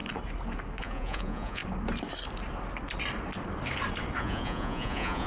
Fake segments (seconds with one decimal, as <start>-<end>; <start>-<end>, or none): 0.8-1.6; 4.2-5.3